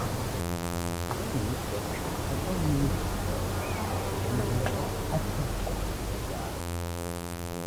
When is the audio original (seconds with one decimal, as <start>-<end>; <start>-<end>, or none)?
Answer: 0.0-0.4; 1.1-6.6